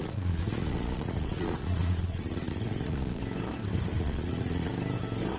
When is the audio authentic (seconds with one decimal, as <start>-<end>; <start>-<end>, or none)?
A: 3.2-4.0; 4.7-5.4